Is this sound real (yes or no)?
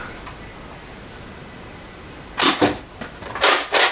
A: yes